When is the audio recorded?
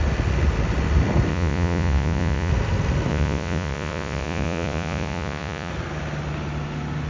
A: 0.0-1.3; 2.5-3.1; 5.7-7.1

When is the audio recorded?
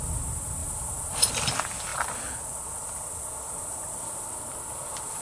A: 0.0-0.6; 1.3-1.9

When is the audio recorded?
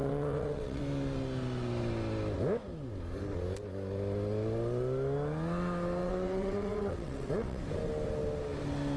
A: 0.8-6.0; 7.6-9.0